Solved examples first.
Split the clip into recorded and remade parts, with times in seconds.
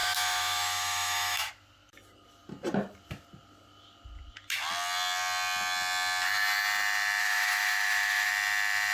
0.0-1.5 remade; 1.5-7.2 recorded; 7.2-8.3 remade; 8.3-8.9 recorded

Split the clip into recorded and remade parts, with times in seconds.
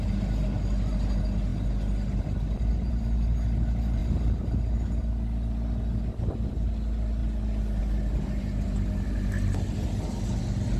0.0-10.8 recorded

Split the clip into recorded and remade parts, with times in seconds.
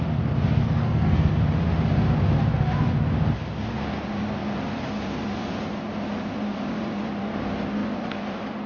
0.0-0.6 recorded; 0.6-1.4 remade; 1.4-8.7 recorded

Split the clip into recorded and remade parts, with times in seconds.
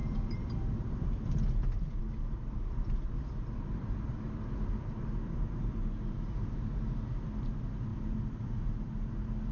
0.0-1.3 remade; 1.3-2.0 recorded; 2.0-5.5 remade; 5.5-9.5 recorded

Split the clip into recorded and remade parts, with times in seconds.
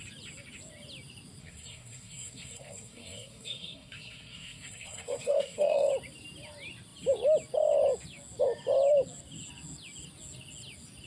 0.0-1.4 recorded; 1.4-5.9 remade; 5.9-11.1 recorded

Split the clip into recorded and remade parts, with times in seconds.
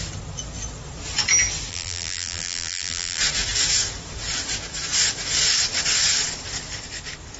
0.0-1.7 recorded; 1.7-3.2 remade; 3.2-7.4 recorded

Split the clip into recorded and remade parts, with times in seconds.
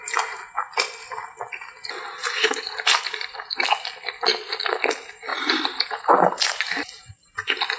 0.0-2.2 recorded; 2.2-3.6 remade; 3.6-5.3 recorded; 5.3-7.1 remade; 7.1-7.8 recorded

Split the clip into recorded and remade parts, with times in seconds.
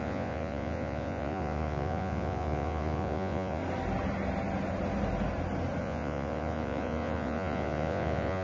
0.0-3.6 remade; 3.6-5.8 recorded; 5.8-8.4 remade